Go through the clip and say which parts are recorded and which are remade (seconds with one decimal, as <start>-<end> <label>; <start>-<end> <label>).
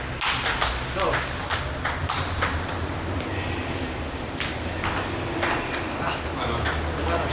0.0-7.3 recorded